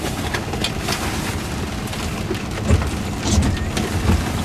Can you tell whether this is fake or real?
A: real